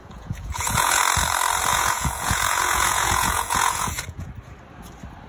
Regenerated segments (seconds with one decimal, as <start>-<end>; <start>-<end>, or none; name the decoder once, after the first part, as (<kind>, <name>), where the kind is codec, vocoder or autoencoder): 0.0-1.0 (vocoder, Vocos); 1.7-4.3